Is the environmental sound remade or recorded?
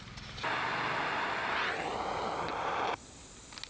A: recorded